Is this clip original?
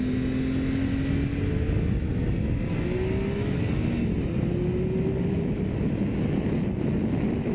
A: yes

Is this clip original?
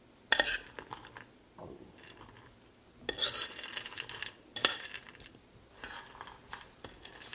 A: yes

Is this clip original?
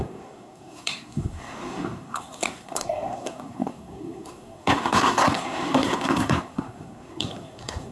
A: no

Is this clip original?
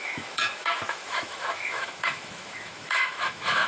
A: no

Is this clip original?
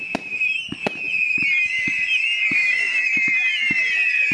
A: yes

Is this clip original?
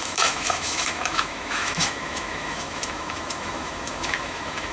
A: no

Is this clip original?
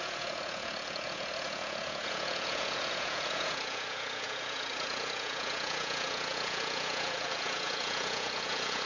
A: no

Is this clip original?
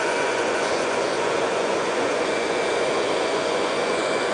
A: no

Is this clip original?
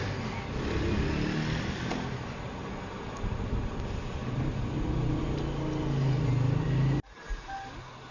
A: yes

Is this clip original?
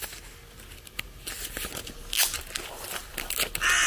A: yes